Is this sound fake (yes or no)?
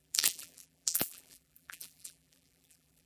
yes